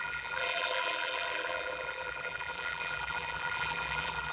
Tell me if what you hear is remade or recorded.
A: remade